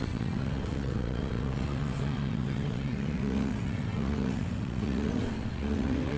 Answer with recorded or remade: remade